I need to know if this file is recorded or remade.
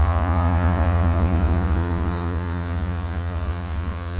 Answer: remade